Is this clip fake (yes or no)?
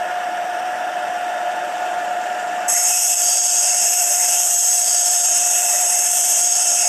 yes